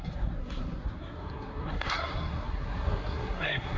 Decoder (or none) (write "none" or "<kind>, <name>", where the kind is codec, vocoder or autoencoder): codec, SNAC